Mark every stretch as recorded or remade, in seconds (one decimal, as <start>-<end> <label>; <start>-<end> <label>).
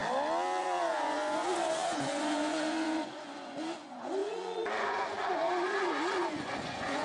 0.0-0.6 recorded; 0.6-7.0 remade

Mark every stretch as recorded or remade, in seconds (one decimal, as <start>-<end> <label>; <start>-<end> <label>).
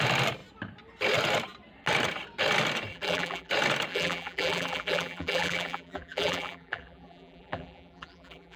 0.0-2.9 recorded; 2.9-3.5 remade; 3.5-3.9 recorded; 3.9-8.6 remade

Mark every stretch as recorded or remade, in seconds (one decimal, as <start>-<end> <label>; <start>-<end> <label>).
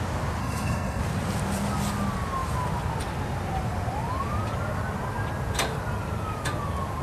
0.0-0.4 recorded; 0.4-1.0 remade; 1.0-7.0 recorded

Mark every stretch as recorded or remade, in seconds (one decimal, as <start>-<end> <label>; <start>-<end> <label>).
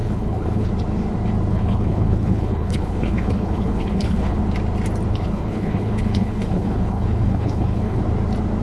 0.0-0.7 remade; 0.7-1.5 recorded; 1.5-4.4 remade; 4.4-5.1 recorded; 5.1-8.0 remade; 8.0-8.6 recorded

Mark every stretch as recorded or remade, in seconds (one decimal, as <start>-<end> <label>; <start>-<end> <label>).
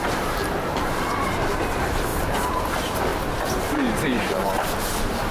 0.0-3.1 remade; 3.1-3.6 recorded; 3.6-5.3 remade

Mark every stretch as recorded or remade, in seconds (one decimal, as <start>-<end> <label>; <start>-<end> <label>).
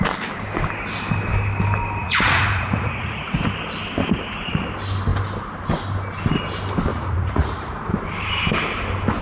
0.0-2.0 recorded; 2.0-3.4 remade; 3.4-6.9 recorded; 6.9-7.9 remade; 7.9-9.2 recorded